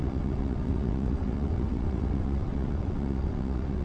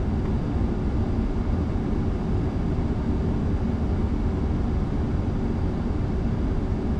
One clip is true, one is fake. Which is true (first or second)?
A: second